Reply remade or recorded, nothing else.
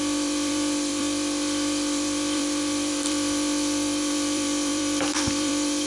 remade